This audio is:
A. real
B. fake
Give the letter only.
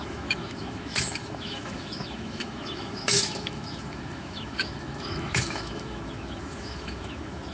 B